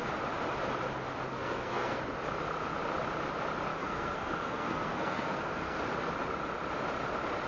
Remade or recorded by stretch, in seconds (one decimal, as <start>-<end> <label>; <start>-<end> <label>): 0.0-1.3 recorded; 1.3-2.0 remade; 2.0-3.8 recorded; 3.8-5.8 remade; 5.8-7.5 recorded